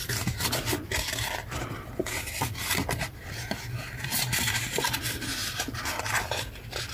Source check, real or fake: real